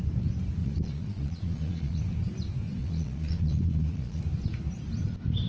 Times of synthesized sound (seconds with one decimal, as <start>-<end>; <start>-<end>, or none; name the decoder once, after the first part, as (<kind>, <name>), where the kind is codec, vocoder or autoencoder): 0.6-2.0 (vocoder, Vocos); 2.8-4.2

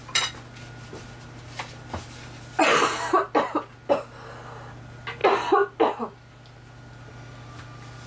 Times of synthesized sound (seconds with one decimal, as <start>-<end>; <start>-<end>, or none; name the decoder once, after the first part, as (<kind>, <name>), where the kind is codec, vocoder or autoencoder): none

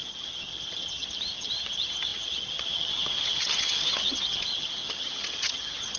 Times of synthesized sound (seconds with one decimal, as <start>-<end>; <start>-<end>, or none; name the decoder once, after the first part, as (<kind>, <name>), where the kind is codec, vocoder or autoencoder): 0.0-6.0 (vocoder, HiFi-GAN)